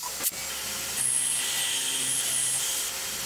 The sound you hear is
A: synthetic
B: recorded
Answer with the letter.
B